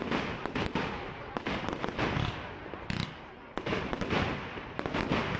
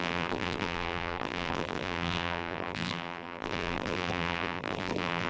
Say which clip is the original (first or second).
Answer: first